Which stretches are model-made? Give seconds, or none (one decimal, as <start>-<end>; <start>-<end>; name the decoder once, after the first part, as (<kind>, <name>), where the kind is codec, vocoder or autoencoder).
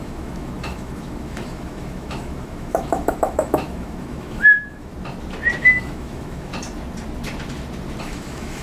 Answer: 0.0-4.9 (autoencoder, DAC-VAE); 5.6-6.5; 8.0-8.6